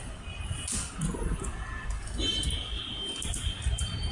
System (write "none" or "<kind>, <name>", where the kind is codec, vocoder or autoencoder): none